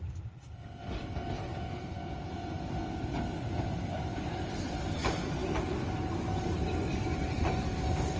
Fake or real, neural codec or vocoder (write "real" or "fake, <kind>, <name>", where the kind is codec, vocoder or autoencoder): real